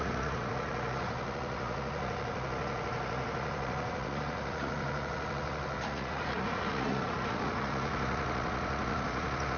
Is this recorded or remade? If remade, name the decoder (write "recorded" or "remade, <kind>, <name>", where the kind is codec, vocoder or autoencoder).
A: remade, vocoder, Vocos